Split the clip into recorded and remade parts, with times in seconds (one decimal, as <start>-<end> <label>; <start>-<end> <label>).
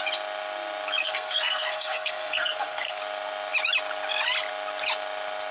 0.0-1.0 recorded; 1.0-3.0 remade; 3.0-5.5 recorded